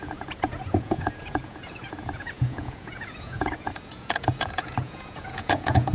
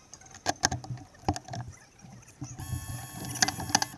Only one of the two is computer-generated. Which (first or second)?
first